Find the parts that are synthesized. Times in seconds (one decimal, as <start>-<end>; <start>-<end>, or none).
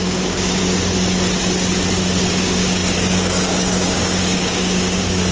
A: 0.0-0.6; 2.3-5.3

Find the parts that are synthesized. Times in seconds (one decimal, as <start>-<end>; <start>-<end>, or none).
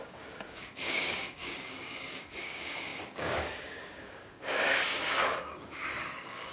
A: 0.0-6.5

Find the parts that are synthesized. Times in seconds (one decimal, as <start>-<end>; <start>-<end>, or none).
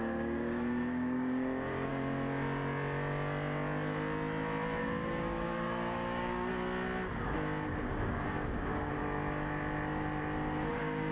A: 0.0-1.9; 4.8-6.5; 7.9-9.0; 10.7-11.1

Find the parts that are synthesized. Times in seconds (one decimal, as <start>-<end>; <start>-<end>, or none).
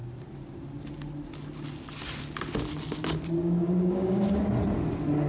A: 3.4-4.4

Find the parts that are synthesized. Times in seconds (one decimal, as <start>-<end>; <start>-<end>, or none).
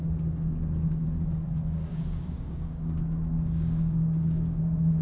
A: 1.9-4.6